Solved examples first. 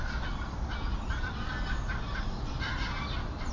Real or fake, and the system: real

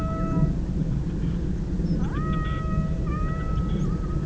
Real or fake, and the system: real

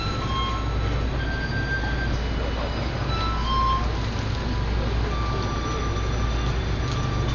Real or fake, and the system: real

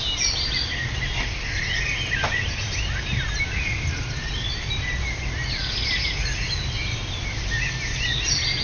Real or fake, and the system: real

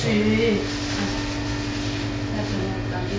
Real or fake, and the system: real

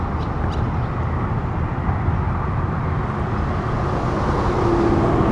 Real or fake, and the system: real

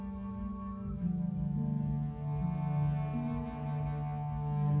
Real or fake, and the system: real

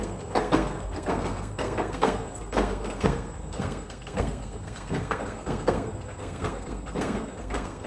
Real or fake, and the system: fake, codec, SNAC